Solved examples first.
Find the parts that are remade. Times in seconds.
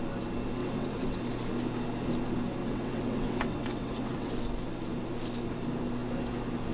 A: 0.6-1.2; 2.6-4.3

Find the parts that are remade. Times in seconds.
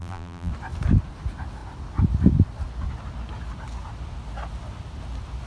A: 0.0-0.5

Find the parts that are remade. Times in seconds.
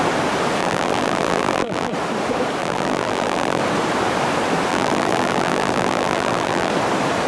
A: 0.6-1.9; 2.6-3.6; 4.7-6.7